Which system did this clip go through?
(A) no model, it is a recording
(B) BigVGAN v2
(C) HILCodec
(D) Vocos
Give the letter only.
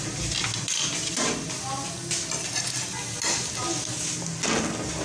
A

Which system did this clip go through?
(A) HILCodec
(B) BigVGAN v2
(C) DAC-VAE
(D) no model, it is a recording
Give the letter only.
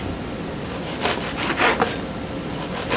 D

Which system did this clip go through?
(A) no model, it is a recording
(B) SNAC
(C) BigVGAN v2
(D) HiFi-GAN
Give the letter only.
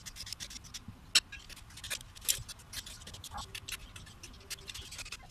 A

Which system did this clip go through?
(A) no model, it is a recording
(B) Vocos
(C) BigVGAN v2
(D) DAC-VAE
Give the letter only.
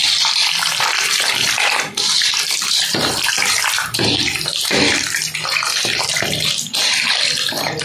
C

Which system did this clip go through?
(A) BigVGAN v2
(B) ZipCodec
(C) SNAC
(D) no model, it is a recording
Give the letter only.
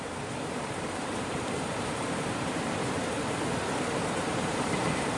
A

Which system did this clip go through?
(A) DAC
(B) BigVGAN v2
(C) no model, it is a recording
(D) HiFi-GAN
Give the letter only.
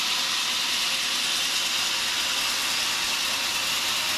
C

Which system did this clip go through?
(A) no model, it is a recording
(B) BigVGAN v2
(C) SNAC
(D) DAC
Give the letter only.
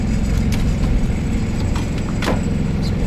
B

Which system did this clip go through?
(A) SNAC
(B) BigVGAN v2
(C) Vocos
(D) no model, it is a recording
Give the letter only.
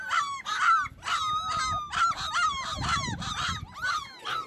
D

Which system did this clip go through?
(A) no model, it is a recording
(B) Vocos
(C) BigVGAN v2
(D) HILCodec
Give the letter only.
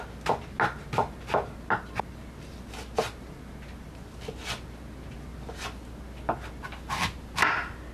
A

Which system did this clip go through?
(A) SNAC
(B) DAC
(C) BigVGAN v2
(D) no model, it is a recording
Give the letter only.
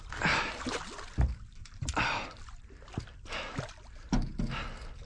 D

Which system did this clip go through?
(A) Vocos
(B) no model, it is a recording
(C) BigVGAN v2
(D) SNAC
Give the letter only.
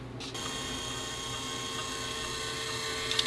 B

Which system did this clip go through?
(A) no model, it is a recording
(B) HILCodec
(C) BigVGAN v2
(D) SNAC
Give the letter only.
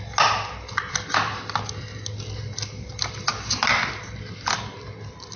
A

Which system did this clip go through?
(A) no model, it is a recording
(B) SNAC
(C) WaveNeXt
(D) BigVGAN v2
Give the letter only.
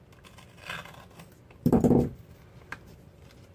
A